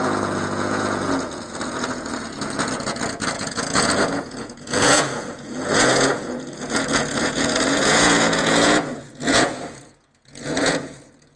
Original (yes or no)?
no